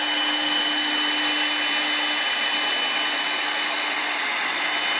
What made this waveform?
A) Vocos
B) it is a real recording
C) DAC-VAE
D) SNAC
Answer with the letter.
B